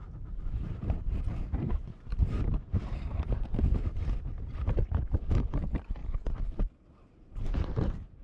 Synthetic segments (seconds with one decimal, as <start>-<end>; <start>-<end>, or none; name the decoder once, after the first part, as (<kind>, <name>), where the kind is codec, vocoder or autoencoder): 0.0-6.0 (vocoder, BigVGAN v2); 6.9-8.2